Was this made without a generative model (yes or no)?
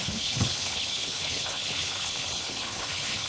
no